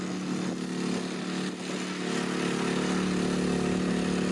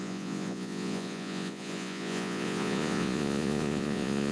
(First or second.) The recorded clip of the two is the first